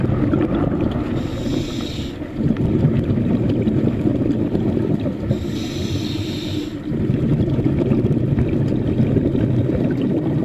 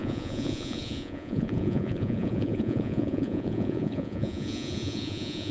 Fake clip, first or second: second